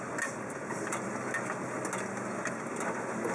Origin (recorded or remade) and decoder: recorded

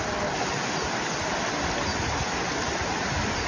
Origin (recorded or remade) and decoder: recorded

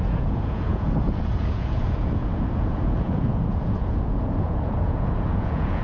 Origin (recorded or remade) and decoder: remade, vocoder, Vocos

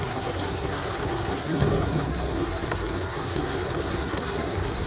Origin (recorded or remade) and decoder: remade, codec, SNAC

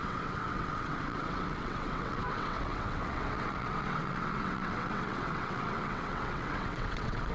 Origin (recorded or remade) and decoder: remade, vocoder, WaveNeXt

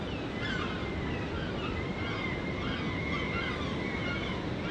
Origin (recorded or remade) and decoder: recorded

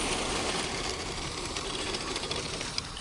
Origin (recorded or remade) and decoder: remade, vocoder, BigVGAN v2